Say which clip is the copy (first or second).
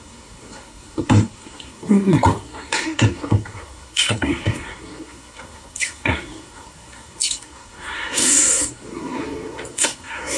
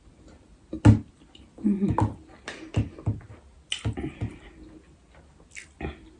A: first